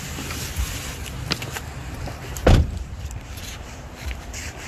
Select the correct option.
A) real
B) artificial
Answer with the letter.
B